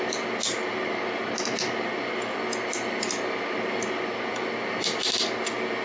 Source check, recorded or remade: recorded